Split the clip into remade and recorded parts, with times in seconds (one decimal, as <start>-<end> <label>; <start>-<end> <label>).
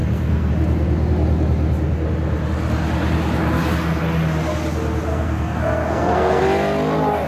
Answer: 0.0-0.5 remade; 0.5-5.1 recorded; 5.1-6.4 remade; 6.4-7.3 recorded